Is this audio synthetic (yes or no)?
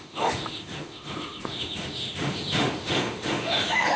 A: yes